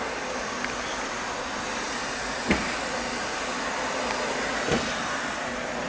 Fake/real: real